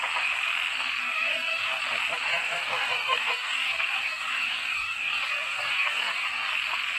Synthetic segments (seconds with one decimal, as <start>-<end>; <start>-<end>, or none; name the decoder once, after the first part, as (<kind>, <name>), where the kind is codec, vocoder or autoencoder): 1.0-1.8 (codec, DAC); 2.3-6.5